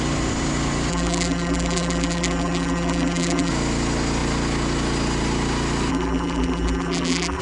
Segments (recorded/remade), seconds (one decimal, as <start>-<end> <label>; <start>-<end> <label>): 0.0-0.9 recorded; 0.9-3.5 remade; 3.5-5.9 recorded; 5.9-7.4 remade